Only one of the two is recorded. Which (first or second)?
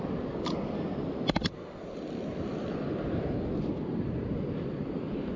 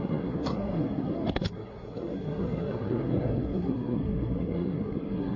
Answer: first